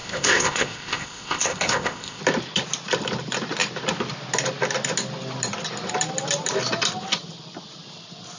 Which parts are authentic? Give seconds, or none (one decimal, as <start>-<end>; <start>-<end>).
2.2-8.4